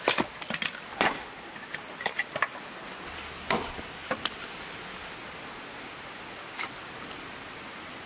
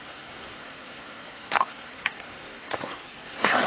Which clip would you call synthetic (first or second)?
second